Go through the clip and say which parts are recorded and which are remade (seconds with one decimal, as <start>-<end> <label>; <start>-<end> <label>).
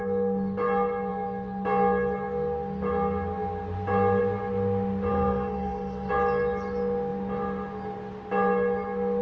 0.0-5.1 recorded; 5.1-6.1 remade; 6.1-9.2 recorded